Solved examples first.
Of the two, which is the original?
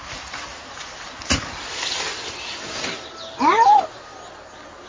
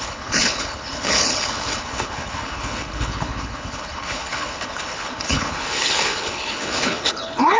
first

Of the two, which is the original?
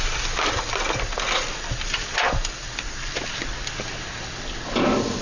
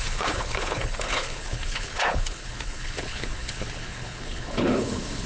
first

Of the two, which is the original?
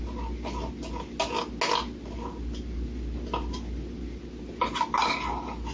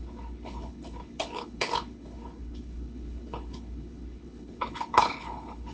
first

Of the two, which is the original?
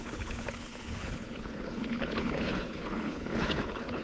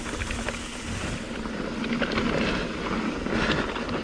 second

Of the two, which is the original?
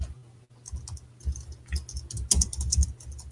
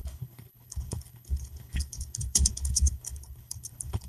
first